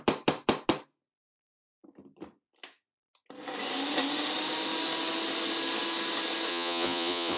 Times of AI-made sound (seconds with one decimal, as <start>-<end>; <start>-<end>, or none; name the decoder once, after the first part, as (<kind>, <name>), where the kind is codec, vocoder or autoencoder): 6.5-7.4 (vocoder, Vocos)